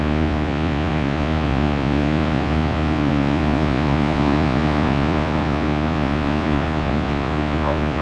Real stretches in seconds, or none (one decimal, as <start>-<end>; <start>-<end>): none